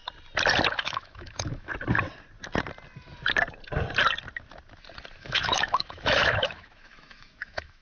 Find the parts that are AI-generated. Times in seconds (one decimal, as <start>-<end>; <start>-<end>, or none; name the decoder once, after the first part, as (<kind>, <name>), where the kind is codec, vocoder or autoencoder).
0.7-1.7 (autoencoder, DAC-VAE); 5.2-7.8